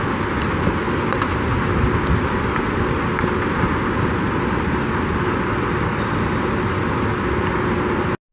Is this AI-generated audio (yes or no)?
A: no